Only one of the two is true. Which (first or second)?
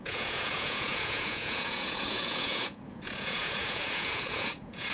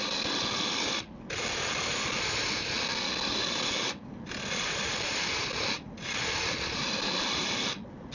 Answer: second